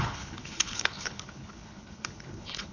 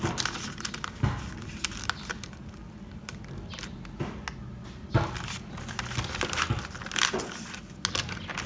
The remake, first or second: first